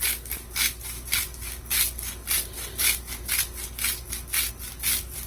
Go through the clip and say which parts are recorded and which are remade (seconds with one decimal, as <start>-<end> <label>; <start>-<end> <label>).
0.0-5.3 recorded